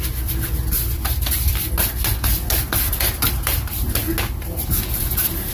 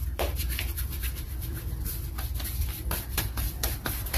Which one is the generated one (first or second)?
second